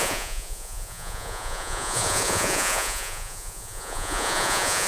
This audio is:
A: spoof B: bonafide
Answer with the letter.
A